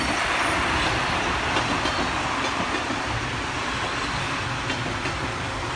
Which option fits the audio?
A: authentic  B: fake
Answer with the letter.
A